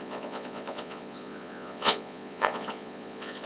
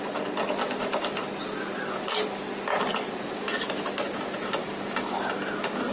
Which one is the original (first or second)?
second